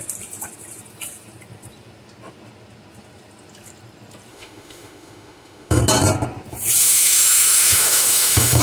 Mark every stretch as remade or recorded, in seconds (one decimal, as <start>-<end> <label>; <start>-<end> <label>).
0.0-4.3 recorded; 4.3-5.8 remade; 5.8-6.8 recorded; 6.8-8.6 remade